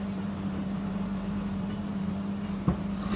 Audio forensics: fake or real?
fake